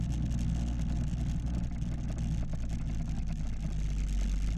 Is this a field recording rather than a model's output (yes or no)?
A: yes